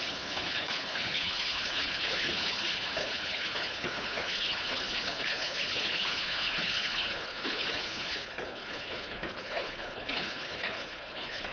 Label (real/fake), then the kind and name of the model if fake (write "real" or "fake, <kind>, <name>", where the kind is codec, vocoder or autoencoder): fake, codec, HILCodec